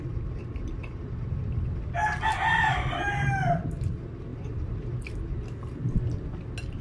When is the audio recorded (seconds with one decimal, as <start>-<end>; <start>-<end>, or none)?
0.0-0.4; 1.3-2.3; 3.8-4.3; 5.0-6.8

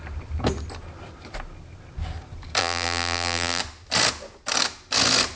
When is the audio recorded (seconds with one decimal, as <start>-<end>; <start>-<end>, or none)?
0.0-2.6; 3.6-5.4